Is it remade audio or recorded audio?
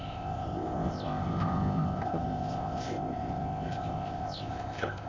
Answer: remade